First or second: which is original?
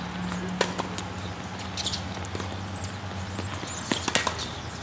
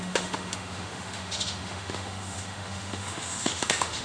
first